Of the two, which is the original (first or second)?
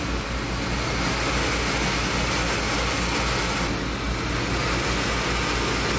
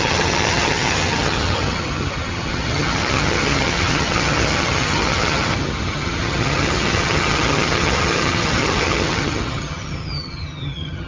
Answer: first